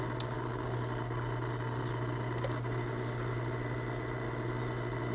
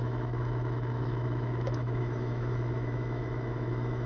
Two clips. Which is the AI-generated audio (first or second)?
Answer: second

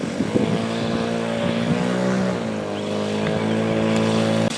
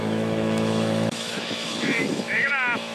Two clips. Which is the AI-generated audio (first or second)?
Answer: second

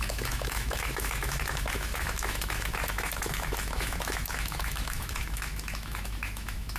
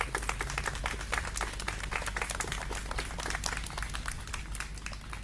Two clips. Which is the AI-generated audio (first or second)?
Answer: first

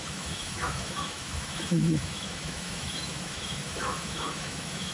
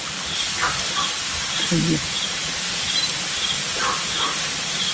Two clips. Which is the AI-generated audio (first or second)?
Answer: first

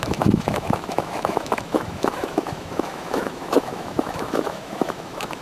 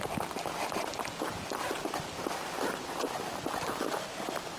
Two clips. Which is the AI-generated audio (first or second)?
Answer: first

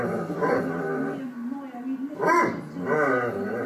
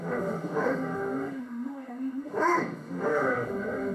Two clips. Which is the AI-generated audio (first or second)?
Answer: second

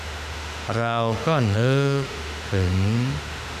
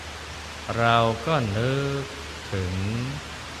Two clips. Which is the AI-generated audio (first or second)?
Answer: first